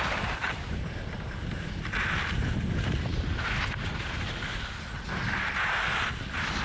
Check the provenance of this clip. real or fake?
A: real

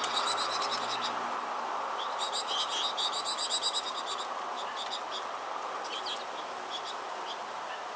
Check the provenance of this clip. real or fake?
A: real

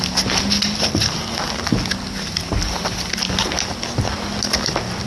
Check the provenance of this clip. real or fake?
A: real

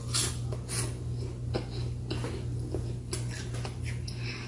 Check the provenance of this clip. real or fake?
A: real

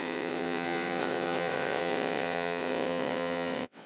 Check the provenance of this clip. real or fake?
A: fake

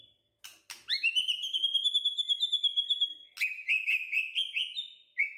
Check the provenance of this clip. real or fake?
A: real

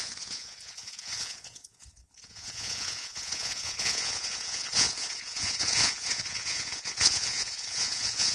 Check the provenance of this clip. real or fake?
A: fake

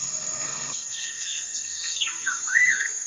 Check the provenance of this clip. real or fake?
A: fake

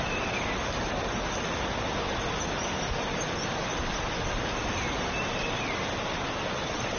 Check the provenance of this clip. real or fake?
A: real